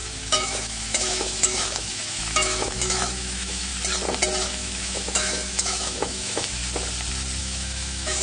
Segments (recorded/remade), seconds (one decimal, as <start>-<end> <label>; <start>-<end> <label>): 0.0-3.7 remade; 3.7-4.4 recorded; 4.4-6.6 remade; 6.6-7.4 recorded; 7.4-8.2 remade